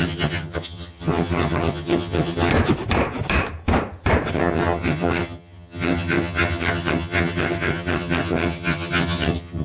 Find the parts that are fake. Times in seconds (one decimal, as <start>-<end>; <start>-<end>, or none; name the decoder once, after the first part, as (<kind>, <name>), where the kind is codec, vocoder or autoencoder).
0.0-2.5 (vocoder, HiFi-GAN); 4.3-9.6